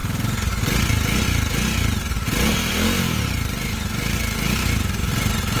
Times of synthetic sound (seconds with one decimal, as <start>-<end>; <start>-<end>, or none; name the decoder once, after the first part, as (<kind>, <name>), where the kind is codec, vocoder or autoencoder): none